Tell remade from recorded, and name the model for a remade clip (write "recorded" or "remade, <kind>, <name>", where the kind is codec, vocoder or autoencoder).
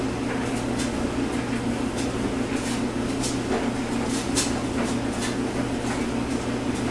recorded